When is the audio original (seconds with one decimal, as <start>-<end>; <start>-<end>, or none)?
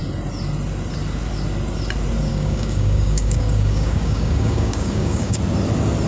0.0-2.3; 5.4-6.1